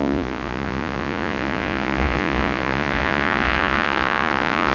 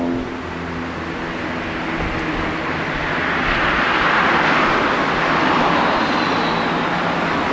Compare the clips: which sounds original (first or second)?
second